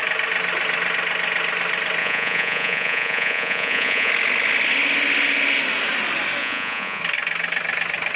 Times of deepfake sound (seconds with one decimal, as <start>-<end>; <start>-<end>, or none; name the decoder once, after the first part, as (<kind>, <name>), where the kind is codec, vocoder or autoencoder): 2.0-4.1 (vocoder, Vocos); 6.4-7.0